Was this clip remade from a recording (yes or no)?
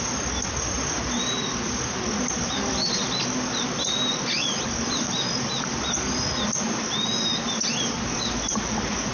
no